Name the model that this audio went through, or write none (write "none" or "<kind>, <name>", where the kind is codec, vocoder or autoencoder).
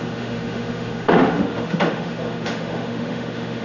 autoencoder, DAC-VAE